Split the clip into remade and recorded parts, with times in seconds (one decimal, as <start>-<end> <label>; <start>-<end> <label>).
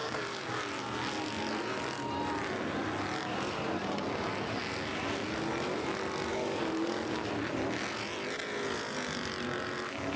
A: 0.0-0.6 remade; 0.6-6.3 recorded; 6.3-7.3 remade; 7.3-10.2 recorded